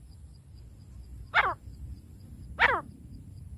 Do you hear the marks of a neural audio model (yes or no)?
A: no